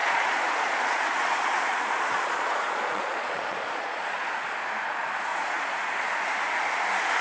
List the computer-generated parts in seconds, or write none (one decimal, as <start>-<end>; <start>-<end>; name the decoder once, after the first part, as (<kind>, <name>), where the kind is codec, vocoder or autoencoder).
0.0-4.3 (vocoder, Vocos); 5.3-5.8